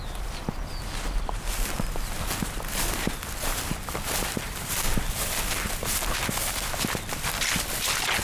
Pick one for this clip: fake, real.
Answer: real